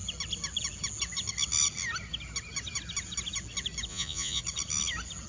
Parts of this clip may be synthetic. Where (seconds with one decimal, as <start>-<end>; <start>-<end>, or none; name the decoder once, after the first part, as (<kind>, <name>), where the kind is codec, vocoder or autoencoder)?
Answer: 3.9-4.4 (vocoder, Vocos)